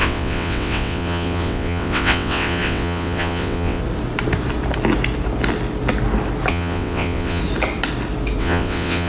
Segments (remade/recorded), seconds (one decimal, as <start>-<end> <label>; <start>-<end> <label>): 0.0-3.8 remade; 3.8-6.5 recorded; 6.5-7.4 remade; 7.4-8.4 recorded; 8.4-9.1 remade